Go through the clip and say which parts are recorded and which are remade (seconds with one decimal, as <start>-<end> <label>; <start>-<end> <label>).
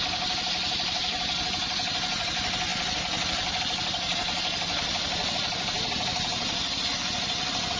0.0-7.8 recorded